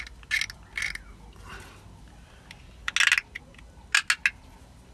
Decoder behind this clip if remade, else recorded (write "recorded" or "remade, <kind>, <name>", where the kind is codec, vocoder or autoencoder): recorded